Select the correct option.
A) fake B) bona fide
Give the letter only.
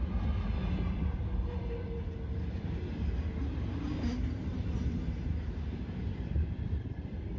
B